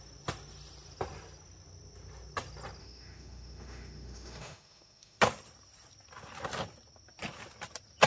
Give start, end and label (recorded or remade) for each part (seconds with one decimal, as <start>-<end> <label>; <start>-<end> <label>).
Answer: 0.0-2.8 recorded; 2.8-5.2 remade; 5.2-8.1 recorded